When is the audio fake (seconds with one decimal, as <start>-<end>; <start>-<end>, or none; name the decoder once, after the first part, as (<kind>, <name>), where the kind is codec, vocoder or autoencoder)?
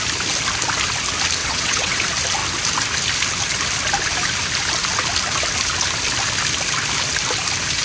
1.4-2.0 (vocoder, WaveNeXt)